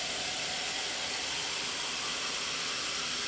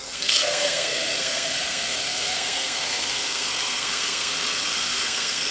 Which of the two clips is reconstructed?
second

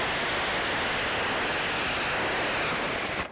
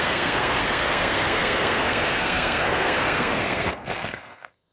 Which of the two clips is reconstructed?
second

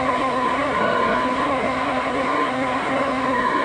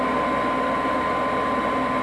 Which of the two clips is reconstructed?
first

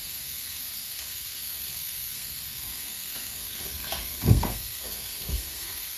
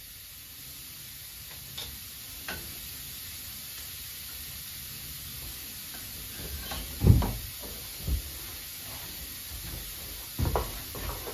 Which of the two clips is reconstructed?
first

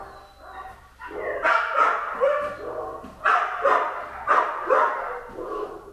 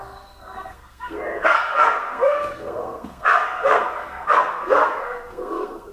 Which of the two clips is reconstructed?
second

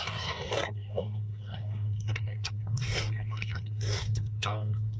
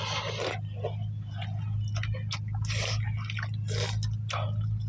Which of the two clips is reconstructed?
first